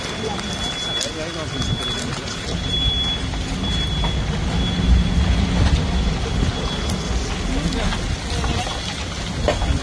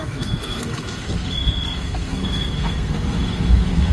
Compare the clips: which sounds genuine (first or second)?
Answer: first